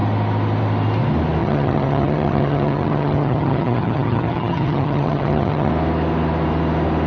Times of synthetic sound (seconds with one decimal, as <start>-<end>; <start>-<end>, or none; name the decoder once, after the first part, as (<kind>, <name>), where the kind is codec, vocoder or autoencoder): 1.4-5.7 (vocoder, HiFi-GAN)